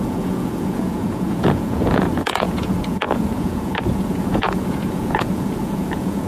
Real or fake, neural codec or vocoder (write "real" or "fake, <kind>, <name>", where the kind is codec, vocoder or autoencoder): fake, vocoder, Vocos